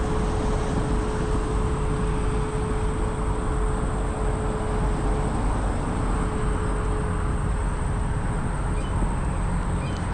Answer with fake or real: real